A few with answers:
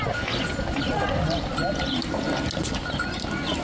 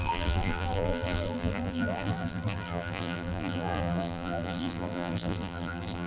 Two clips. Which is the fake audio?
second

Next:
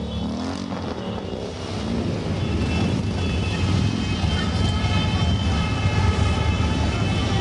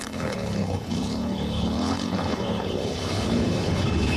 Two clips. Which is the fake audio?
second